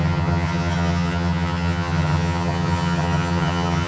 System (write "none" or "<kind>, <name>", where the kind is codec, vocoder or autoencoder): vocoder, HiFi-GAN